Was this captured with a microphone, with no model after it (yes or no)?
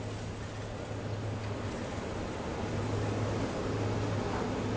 yes